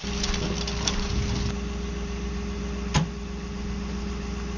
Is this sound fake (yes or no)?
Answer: no